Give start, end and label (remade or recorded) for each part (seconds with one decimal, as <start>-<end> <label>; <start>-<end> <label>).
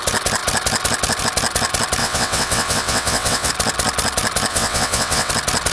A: 0.0-2.0 recorded; 2.0-3.5 remade; 3.5-4.5 recorded; 4.5-5.3 remade; 5.3-5.7 recorded